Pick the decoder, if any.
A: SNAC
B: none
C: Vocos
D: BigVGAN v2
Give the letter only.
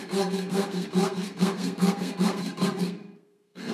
A